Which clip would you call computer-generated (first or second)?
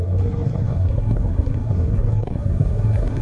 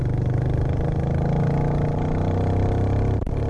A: first